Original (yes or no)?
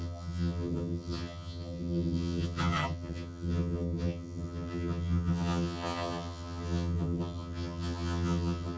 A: no